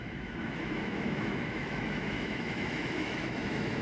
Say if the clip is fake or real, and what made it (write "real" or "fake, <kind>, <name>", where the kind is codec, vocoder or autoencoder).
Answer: fake, autoencoder, DAC-VAE